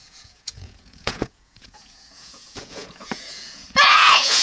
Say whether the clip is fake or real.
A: fake